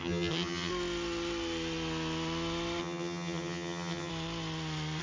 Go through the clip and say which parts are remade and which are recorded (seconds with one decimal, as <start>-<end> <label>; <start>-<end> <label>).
0.0-0.7 remade; 0.7-2.8 recorded; 2.8-4.1 remade; 4.1-5.0 recorded